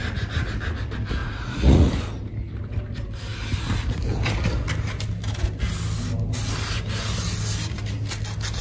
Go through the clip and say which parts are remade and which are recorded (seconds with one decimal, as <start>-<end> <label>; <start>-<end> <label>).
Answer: 0.0-1.2 recorded; 1.2-1.9 remade; 1.9-8.6 recorded